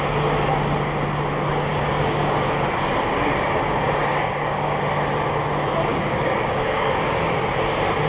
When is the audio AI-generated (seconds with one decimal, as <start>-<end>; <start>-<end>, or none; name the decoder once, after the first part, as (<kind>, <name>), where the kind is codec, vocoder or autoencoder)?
1.7-2.6 (codec, DAC); 4.1-4.8; 5.9-6.9